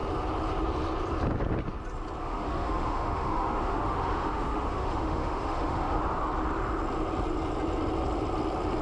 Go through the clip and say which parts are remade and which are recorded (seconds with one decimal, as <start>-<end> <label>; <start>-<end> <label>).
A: 0.0-2.2 recorded; 2.2-6.0 remade; 6.0-8.8 recorded